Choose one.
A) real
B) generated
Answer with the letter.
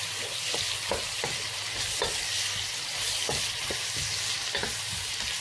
A